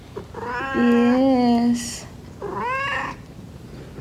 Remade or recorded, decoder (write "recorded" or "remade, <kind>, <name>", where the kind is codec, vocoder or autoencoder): recorded